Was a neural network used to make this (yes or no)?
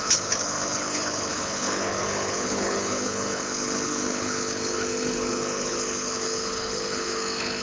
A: yes